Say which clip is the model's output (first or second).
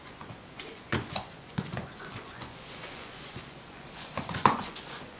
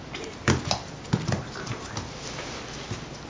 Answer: first